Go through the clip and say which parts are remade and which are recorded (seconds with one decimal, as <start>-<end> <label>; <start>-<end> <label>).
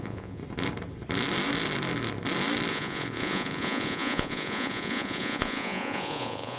0.0-0.4 remade; 0.4-2.7 recorded; 2.7-6.6 remade